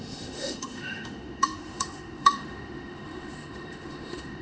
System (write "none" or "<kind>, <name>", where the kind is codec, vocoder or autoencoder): autoencoder, DAC-VAE